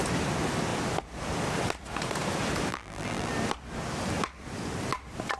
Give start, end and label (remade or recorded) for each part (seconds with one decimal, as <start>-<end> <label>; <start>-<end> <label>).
0.0-2.7 recorded; 2.7-3.3 remade; 3.3-5.4 recorded